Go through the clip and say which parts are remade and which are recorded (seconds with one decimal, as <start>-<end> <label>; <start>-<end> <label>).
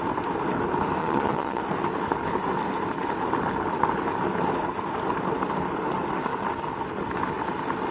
0.0-1.0 recorded; 1.0-1.6 remade; 1.6-7.9 recorded